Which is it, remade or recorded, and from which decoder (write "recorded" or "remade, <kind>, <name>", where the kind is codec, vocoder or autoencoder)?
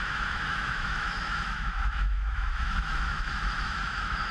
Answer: remade, autoencoder, DAC-VAE